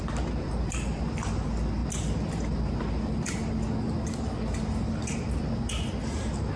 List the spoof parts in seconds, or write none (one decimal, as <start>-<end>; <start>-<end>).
none